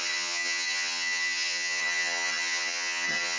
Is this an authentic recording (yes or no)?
no